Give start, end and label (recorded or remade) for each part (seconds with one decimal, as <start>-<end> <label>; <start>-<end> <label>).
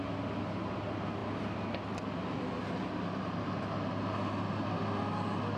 0.0-5.6 recorded